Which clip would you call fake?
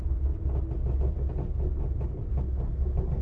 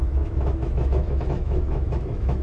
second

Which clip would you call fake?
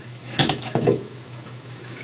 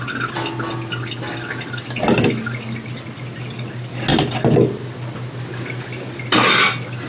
first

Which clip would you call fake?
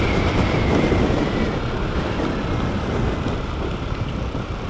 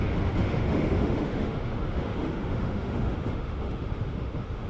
second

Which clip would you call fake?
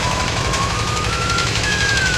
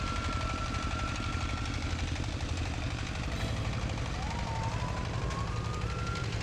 first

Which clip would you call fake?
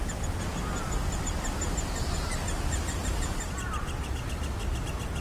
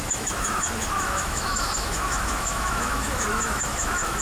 second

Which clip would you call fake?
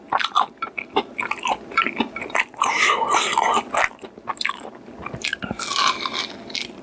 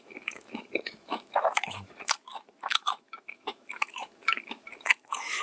second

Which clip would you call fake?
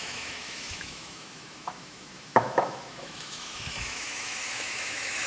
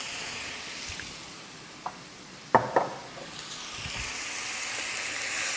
first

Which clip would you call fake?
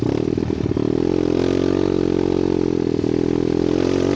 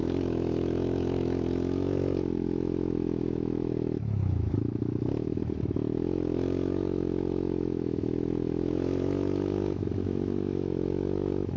second